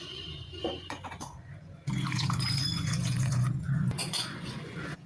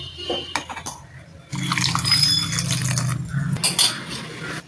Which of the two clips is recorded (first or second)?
second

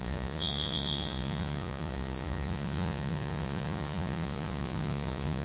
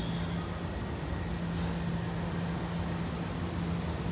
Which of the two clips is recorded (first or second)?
second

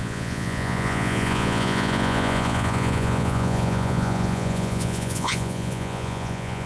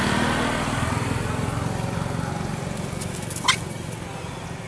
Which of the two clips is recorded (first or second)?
second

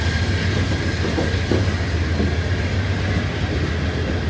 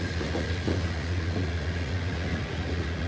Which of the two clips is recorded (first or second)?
first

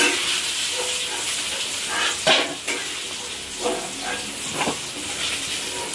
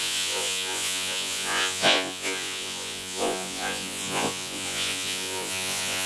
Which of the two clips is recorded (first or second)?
first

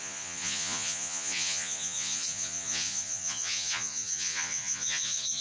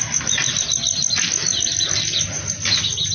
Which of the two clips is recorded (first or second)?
second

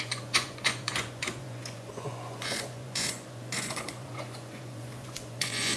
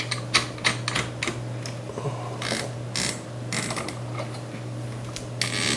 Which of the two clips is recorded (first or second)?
second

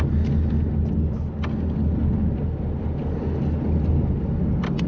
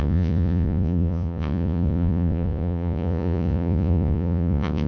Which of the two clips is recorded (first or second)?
first